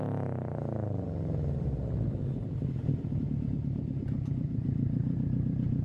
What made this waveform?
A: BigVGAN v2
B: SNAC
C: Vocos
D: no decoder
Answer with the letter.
A